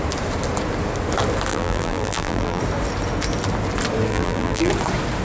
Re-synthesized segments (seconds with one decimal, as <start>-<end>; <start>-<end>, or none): 1.5-2.6; 4.1-4.7

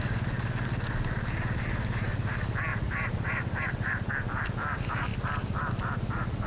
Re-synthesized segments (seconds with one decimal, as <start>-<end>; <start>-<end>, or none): 2.7-4.1; 5.1-5.7

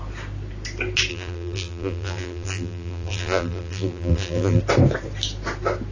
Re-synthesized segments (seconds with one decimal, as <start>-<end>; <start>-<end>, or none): 1.1-4.6

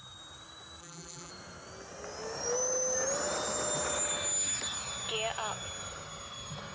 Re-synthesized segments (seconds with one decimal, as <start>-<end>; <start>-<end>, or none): 0.8-1.3

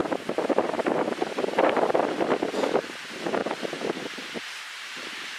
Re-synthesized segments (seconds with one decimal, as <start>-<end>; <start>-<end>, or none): 0.0-1.2; 3.4-5.4

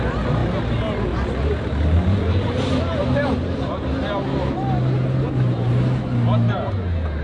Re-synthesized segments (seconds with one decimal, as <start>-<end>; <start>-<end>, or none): 3.0-4.0

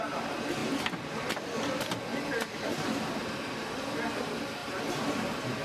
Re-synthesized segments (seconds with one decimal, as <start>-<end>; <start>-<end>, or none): 0.6-4.0; 4.6-5.6

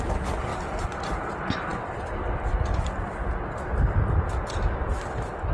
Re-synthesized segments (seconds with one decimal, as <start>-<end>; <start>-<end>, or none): 0.5-1.0